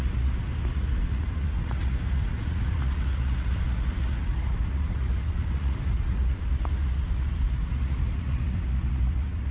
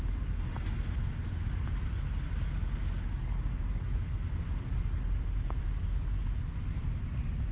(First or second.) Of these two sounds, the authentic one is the second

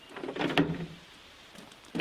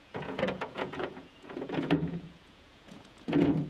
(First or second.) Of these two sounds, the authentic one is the first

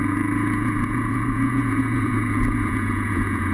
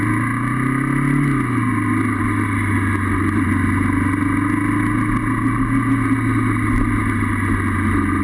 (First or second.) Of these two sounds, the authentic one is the second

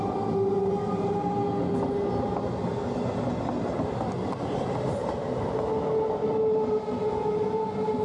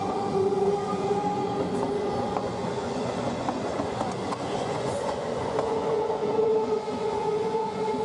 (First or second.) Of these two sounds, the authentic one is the first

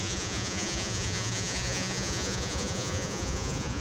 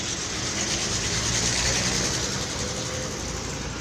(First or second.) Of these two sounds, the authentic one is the second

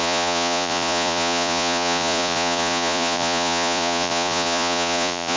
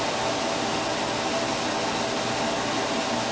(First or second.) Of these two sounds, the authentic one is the second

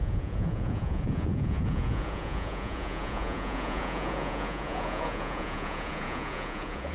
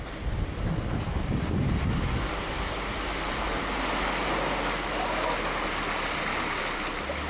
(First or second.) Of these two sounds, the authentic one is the second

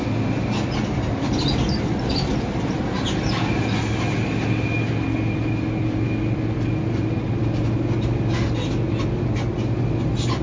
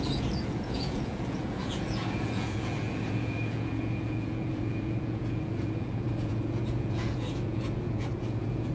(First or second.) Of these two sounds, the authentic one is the first